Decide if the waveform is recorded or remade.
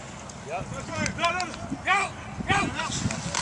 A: recorded